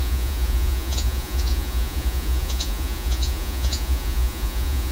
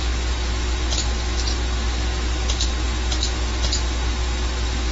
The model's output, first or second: first